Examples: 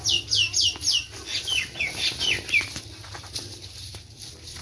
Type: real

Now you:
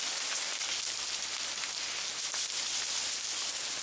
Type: real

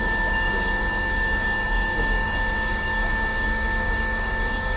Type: fake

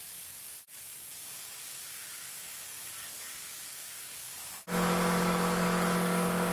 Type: fake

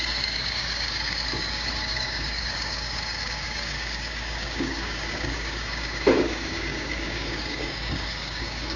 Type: fake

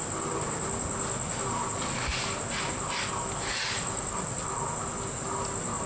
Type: real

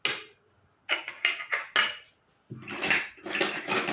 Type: real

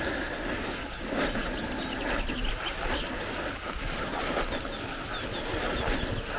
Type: real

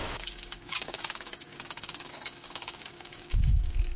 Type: fake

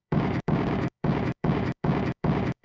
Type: fake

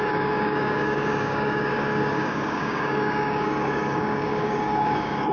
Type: fake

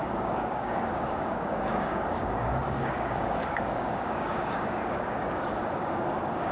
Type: fake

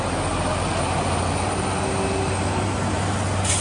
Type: real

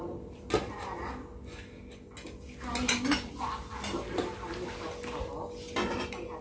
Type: real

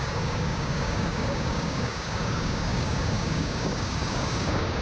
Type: fake